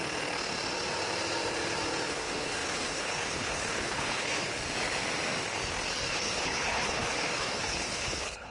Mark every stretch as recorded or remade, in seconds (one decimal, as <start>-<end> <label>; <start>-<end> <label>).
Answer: 0.0-2.1 recorded; 2.1-4.6 remade; 4.6-6.1 recorded; 6.1-8.5 remade